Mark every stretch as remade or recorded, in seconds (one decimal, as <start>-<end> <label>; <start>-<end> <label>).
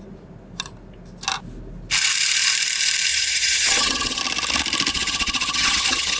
0.0-3.1 recorded; 3.1-4.2 remade; 4.2-4.9 recorded; 4.9-6.2 remade